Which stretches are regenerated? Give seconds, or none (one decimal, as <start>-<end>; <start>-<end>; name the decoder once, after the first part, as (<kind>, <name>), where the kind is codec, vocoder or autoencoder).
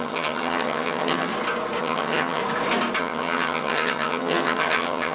0.0-1.3 (vocoder, HiFi-GAN); 1.8-2.4; 3.0-5.1